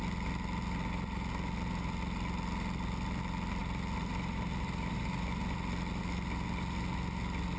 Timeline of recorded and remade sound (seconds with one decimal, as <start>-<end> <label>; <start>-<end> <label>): 0.0-7.6 recorded